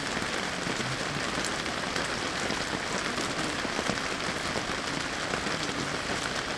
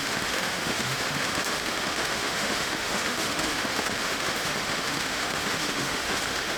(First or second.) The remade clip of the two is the second